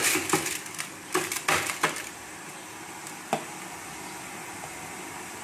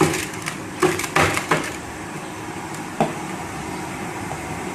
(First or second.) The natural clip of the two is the first